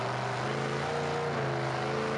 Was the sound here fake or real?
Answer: real